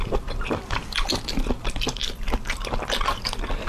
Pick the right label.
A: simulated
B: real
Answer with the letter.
B